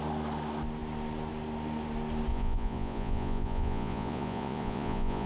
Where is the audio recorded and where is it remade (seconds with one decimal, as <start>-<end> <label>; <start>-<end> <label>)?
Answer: 0.0-2.3 recorded; 2.3-5.3 remade